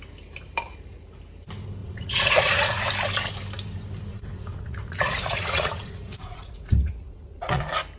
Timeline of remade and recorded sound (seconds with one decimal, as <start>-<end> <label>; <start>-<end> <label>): 0.0-1.8 recorded; 1.8-2.9 remade; 2.9-4.1 recorded; 4.1-7.6 remade; 7.6-8.0 recorded